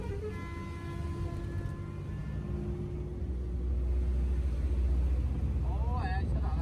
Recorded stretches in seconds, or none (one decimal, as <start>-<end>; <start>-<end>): 0.0-6.6